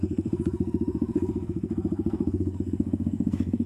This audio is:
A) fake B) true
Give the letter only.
A